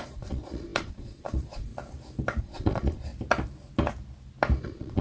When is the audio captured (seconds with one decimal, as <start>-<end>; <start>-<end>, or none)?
1.7-2.4; 3.1-4.6